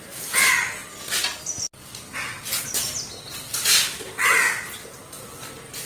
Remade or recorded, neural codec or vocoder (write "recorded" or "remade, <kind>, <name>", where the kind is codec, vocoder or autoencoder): recorded